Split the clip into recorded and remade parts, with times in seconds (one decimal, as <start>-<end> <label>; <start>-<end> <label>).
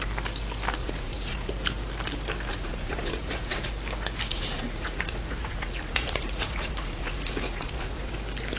0.0-0.8 recorded; 0.8-1.5 remade; 1.5-2.5 recorded; 2.5-3.7 remade; 3.7-4.3 recorded; 4.3-8.1 remade; 8.1-8.6 recorded